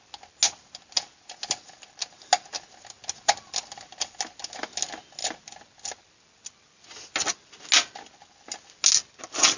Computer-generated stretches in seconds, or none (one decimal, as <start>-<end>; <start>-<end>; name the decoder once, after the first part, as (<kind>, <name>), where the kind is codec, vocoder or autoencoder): none